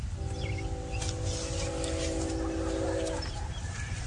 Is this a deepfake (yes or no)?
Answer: no